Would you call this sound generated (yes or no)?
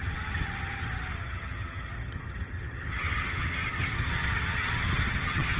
yes